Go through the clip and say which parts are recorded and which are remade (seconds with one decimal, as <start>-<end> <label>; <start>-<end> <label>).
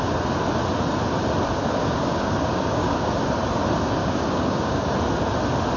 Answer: 0.0-1.6 recorded; 1.6-3.2 remade; 3.2-4.0 recorded; 4.0-4.9 remade; 4.9-5.8 recorded